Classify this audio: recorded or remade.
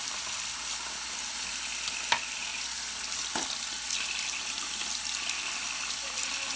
recorded